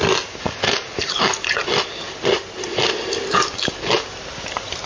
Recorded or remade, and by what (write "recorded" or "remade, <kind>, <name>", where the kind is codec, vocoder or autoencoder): recorded